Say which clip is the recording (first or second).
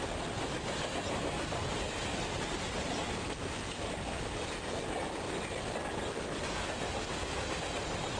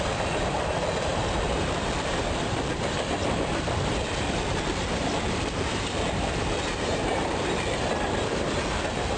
first